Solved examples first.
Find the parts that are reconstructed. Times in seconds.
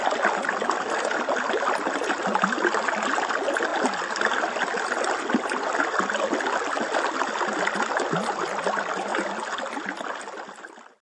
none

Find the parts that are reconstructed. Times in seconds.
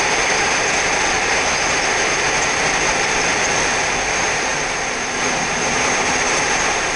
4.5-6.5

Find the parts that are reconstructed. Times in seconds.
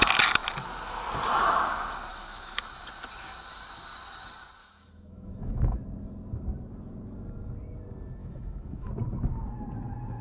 2.1-2.6; 4.6-5.8; 8.2-8.9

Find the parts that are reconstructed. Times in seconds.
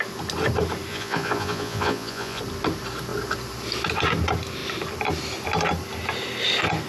0.9-2.4